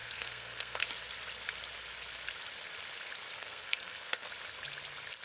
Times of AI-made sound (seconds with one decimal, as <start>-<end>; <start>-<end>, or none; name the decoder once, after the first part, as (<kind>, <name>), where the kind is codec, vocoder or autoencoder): 0.0-0.8 (codec, SNAC); 3.4-4.3

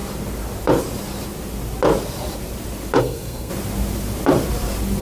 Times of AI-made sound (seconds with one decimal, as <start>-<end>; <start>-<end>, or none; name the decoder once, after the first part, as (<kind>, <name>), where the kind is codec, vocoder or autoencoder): 3.0-3.5 (codec, SNAC)

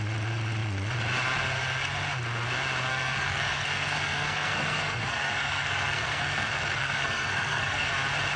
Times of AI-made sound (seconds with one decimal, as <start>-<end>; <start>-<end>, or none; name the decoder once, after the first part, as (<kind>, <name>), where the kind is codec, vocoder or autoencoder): 2.9-7.9 (codec, SNAC)

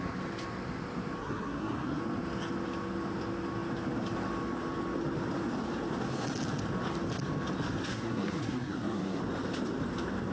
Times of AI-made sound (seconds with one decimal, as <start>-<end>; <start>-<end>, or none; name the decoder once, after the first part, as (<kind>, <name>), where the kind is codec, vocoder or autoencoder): 1.2-2.0 (codec, SNAC); 7.9-9.2